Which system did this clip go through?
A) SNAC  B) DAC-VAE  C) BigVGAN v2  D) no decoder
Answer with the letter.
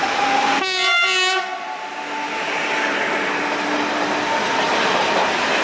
D